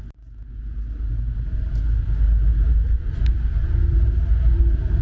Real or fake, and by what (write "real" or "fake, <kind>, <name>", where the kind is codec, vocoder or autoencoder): real